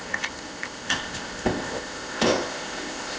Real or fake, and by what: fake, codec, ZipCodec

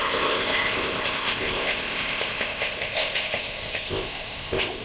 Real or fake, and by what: fake, codec, ZipCodec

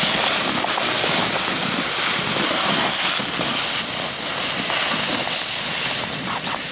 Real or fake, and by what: real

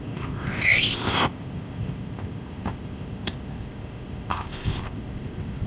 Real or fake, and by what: fake, codec, ZipCodec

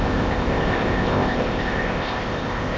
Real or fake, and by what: fake, codec, ZipCodec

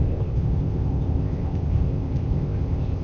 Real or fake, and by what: fake, codec, ZipCodec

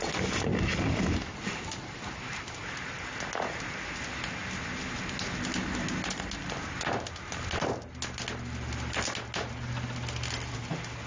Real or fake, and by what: real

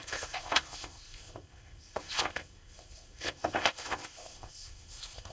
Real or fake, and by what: fake, codec, ZipCodec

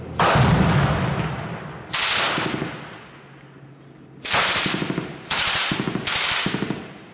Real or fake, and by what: real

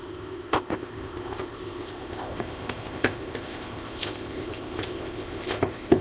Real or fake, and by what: fake, codec, ZipCodec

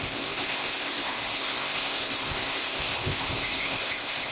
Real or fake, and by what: fake, codec, ZipCodec